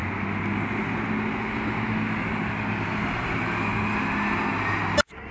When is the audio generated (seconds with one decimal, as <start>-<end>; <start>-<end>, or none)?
none